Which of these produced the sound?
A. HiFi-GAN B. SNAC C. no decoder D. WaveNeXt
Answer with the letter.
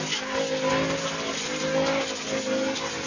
C